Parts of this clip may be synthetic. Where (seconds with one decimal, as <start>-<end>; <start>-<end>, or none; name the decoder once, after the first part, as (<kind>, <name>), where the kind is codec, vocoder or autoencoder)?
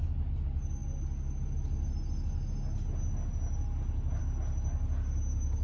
none